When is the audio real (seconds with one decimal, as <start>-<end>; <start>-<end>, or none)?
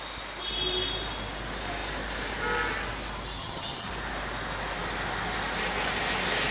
0.0-3.4; 3.9-6.5